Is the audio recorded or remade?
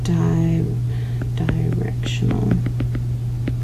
recorded